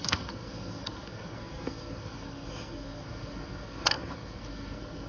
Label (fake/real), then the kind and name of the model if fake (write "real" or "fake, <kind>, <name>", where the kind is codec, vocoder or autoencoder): fake, codec, SNAC